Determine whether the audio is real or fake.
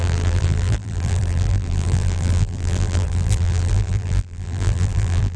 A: fake